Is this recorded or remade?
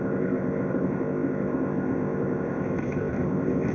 remade